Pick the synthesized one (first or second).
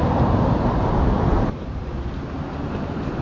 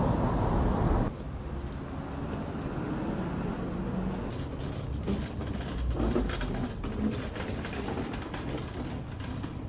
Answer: first